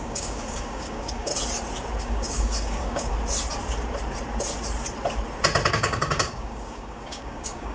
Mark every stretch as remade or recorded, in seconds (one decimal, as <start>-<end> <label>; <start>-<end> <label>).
0.0-1.3 remade; 1.3-2.0 recorded; 2.0-3.1 remade; 3.1-5.7 recorded; 5.7-7.7 remade